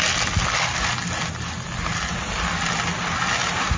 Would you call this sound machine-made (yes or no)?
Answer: no